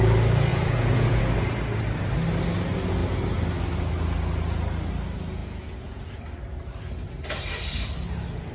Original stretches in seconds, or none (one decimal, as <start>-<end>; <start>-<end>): 0.0-0.5; 1.2-5.4; 6.2-8.5